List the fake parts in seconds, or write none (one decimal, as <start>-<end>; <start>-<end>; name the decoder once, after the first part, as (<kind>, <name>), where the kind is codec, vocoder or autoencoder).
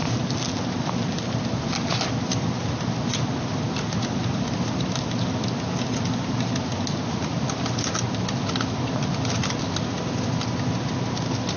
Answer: none